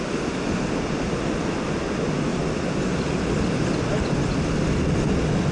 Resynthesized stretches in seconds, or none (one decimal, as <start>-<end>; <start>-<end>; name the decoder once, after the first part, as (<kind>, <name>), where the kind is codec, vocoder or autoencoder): none

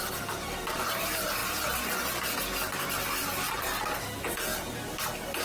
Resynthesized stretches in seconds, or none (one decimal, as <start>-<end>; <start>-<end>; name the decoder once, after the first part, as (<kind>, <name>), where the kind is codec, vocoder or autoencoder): none